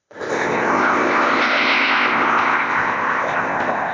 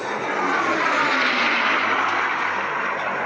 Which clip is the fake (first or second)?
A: first